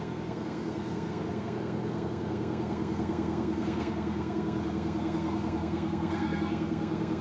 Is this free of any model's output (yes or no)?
no